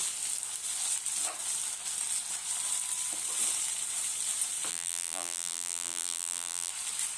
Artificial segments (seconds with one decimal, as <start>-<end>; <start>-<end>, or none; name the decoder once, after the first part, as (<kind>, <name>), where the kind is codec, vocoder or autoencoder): 4.7-6.7 (vocoder, BigVGAN v2)